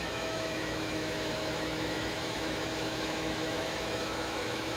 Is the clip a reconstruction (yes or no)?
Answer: yes